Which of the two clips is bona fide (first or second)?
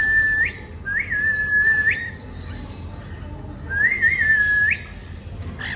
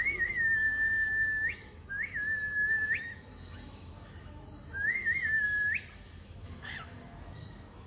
first